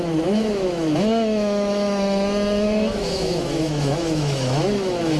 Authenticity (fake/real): fake